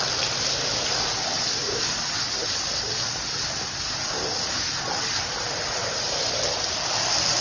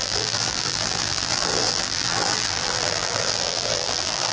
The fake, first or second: second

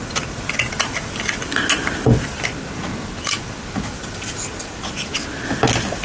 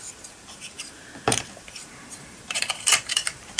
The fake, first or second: second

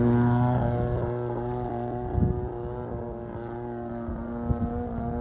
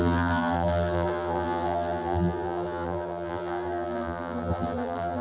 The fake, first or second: second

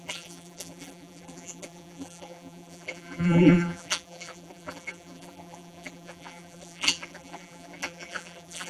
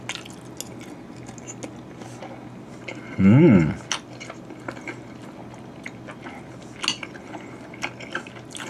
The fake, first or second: first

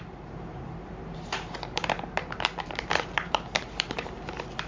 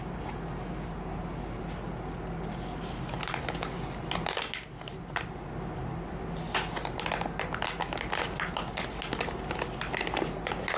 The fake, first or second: first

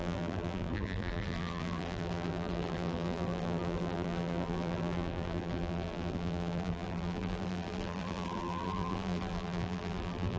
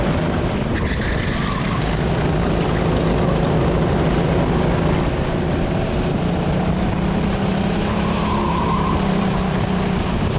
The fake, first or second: first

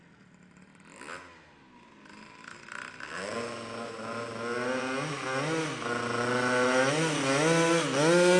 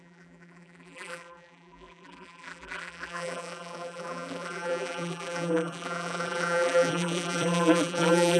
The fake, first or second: second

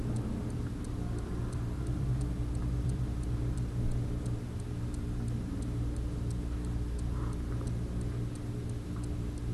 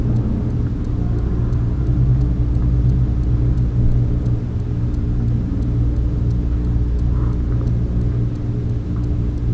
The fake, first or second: first